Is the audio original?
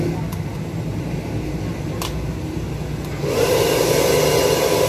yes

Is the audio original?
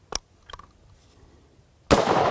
yes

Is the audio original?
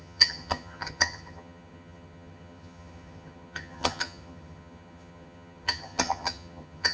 no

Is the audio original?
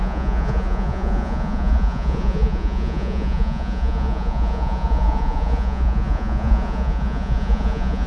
no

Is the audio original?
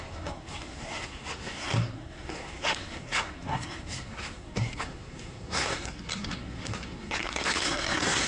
no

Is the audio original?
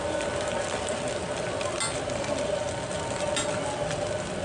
yes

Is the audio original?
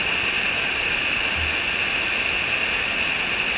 yes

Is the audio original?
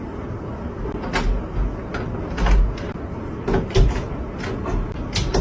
yes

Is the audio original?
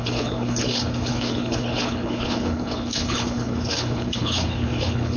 no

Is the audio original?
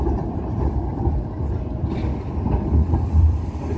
no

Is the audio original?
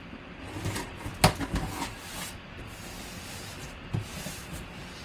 yes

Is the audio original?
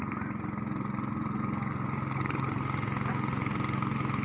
yes